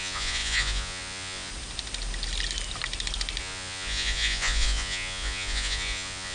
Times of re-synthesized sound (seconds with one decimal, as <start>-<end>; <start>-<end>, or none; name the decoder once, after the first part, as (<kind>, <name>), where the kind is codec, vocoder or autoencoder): 0.0-1.5 (vocoder, Vocos); 3.4-6.3